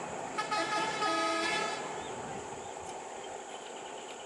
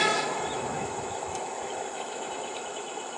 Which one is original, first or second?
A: first